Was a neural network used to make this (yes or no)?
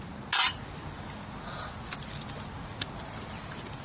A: no